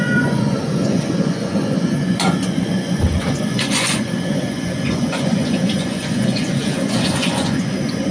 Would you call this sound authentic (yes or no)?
no